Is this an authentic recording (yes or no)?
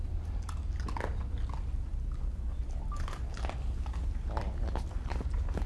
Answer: yes